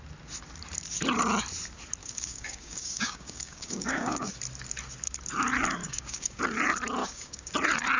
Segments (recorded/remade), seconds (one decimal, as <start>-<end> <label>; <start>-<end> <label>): 0.0-2.0 recorded; 2.0-4.3 remade; 4.3-5.8 recorded; 5.8-6.4 remade; 6.4-7.0 recorded; 7.0-7.5 remade; 7.5-8.0 recorded